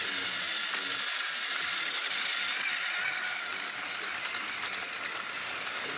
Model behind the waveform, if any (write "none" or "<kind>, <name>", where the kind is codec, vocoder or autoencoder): none